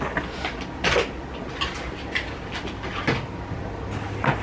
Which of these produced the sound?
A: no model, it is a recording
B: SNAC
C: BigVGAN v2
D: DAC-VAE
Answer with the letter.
C